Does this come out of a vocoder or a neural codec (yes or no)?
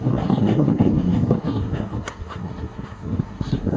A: yes